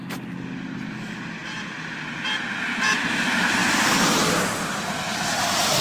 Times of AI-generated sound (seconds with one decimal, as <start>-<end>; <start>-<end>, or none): none

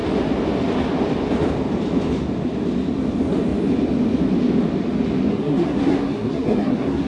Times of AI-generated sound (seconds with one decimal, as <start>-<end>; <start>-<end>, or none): 5.3-7.1

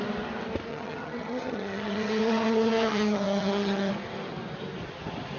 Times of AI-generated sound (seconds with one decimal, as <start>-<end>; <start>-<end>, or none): 0.7-3.9

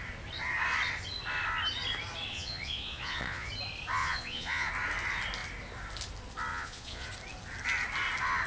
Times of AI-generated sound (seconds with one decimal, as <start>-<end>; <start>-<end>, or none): 2.3-3.5; 4.0-4.7; 6.5-7.1

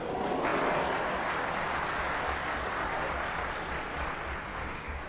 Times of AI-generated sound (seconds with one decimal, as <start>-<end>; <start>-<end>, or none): 4.5-5.1

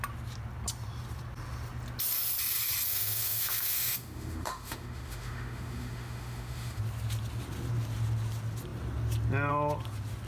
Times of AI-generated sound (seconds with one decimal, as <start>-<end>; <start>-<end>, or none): 2.9-6.8

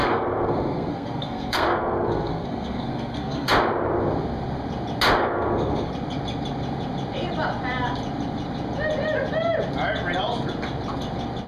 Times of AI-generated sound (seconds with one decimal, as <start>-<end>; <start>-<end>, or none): 0.0-3.5; 5.2-5.9